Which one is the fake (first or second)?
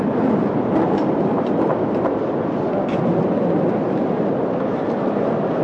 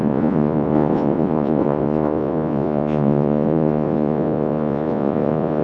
second